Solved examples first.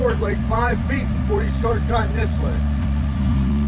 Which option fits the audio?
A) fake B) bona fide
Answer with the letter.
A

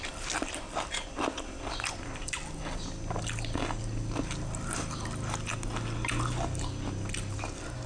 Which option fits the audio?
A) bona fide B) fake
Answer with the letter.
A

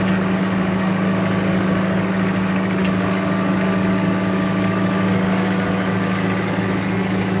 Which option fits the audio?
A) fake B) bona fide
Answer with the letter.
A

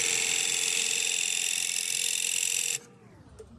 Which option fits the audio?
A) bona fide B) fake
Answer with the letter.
A